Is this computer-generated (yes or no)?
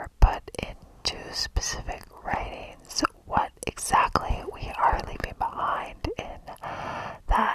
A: no